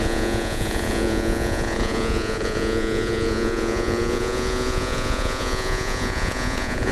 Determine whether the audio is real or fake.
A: fake